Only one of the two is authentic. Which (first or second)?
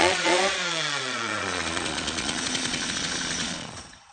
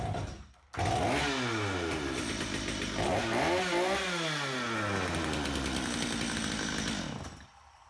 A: second